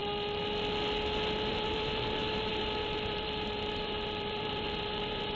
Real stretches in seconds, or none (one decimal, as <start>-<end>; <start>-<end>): 0.0-1.5